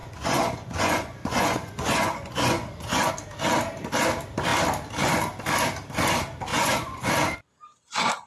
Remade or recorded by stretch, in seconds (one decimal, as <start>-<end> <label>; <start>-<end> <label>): 0.0-3.1 remade; 3.1-6.5 recorded; 6.5-7.1 remade; 7.1-8.3 recorded